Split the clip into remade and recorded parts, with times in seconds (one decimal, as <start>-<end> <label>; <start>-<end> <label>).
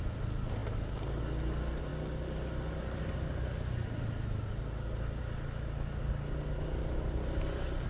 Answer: 0.0-7.9 recorded